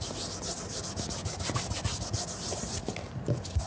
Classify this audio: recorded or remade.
recorded